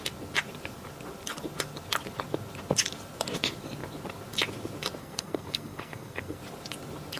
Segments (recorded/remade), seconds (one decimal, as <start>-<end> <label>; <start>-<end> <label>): 0.0-5.0 recorded; 5.0-6.4 remade; 6.4-7.2 recorded

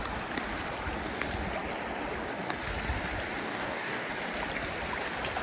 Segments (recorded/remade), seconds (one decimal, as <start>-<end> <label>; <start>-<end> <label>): 0.0-3.4 recorded; 3.4-4.1 remade; 4.1-5.4 recorded

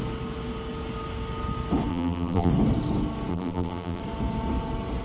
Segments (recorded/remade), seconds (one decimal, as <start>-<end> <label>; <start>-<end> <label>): 0.0-1.9 recorded; 1.9-2.5 remade; 2.5-3.3 recorded; 3.3-4.0 remade; 4.0-5.0 recorded

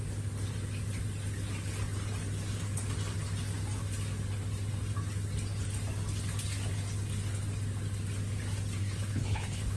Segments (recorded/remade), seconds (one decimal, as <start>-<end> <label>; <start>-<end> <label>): 0.0-8.8 recorded; 8.8-9.8 remade

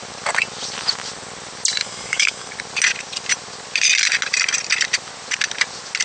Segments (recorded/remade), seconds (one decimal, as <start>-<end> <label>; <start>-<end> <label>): 0.0-1.8 recorded; 1.8-2.5 remade; 2.5-6.0 recorded

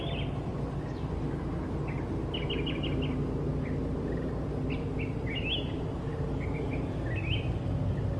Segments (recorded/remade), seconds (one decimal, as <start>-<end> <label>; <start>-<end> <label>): 0.0-8.2 recorded

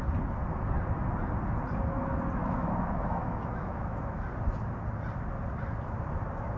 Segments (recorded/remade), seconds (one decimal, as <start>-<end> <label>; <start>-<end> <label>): 0.0-2.4 recorded; 2.4-4.3 remade; 4.3-6.6 recorded

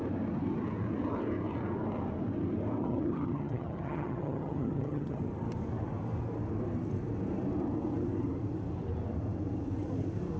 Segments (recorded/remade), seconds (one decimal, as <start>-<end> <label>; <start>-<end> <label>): 0.0-2.8 recorded; 2.8-5.2 remade; 5.2-10.4 recorded